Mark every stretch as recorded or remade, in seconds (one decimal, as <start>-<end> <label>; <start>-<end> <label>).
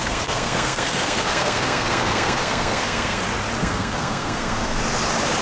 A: 0.0-3.2 remade; 3.2-3.6 recorded; 3.6-4.8 remade; 4.8-5.4 recorded